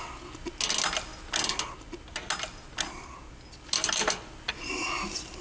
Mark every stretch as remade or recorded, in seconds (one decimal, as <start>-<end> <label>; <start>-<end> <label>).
0.0-5.4 recorded